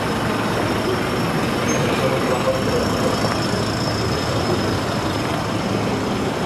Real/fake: real